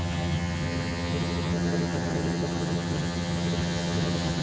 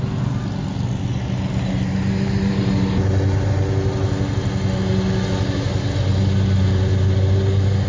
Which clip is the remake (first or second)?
first